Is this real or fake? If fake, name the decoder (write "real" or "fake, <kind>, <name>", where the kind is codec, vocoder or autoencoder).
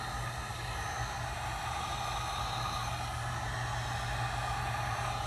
real